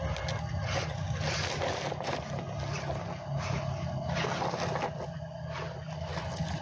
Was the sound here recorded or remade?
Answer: recorded